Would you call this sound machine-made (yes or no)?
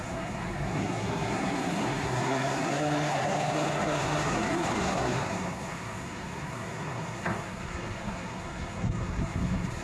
yes